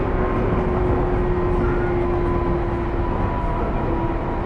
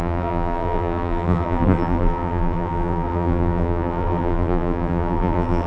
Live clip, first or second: first